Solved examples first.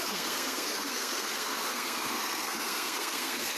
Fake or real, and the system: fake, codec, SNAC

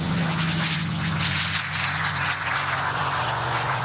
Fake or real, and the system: fake, vocoder, Vocos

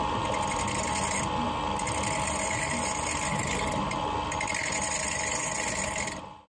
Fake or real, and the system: real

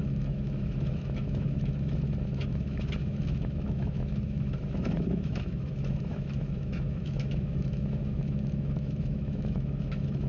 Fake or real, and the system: fake, autoencoder, DAC-VAE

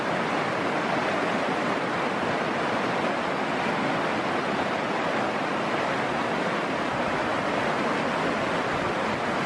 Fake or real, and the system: real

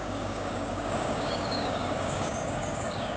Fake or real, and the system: fake, codec, DAC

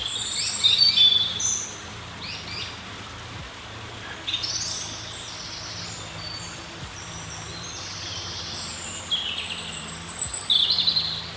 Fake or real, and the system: real